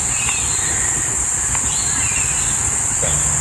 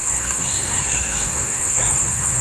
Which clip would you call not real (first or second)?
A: second